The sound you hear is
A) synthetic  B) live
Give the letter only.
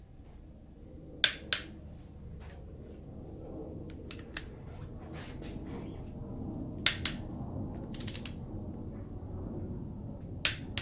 B